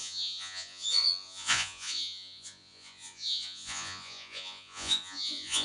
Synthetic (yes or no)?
yes